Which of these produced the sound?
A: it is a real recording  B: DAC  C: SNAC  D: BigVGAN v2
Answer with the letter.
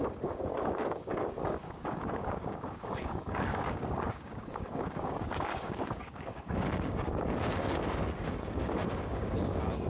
B